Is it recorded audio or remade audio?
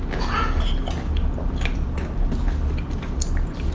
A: recorded